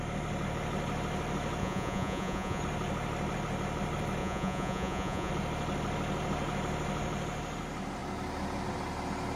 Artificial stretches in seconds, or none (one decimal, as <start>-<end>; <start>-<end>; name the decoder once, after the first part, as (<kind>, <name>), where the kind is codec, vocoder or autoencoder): 1.6-2.6 (vocoder, Vocos); 4.2-5.3